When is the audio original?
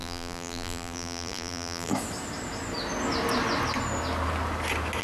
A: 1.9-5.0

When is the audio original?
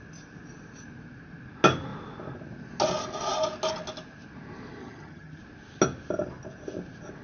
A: 0.0-4.8; 5.4-7.2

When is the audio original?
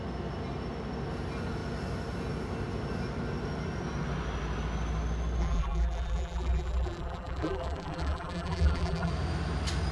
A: 0.0-5.4; 9.1-9.9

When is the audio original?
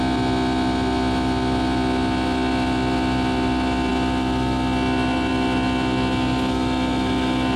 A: 0.0-7.6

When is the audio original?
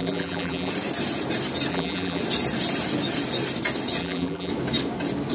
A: 0.7-1.7; 2.2-4.0; 4.5-5.3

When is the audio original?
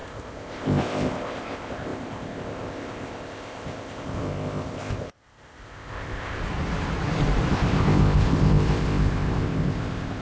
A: 6.4-7.5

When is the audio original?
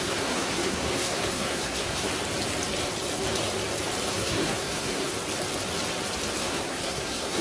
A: 2.1-4.1; 5.1-6.4